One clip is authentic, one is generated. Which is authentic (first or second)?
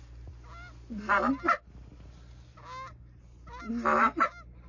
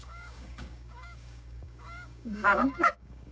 first